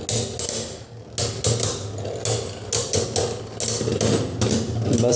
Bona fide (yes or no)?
yes